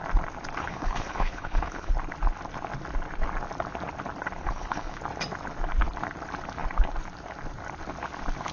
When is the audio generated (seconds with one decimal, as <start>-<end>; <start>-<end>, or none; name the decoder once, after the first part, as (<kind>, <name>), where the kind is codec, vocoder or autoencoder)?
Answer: 0.6-1.9 (codec, HILCodec); 4.4-5.0